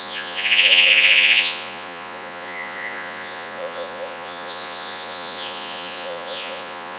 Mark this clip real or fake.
fake